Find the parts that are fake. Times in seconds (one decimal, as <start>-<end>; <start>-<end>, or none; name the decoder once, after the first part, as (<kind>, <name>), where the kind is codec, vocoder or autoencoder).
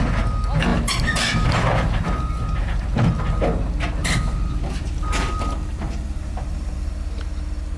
0.7-3.1 (vocoder, BigVGAN v2); 4.0-6.9